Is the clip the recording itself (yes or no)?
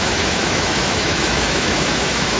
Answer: no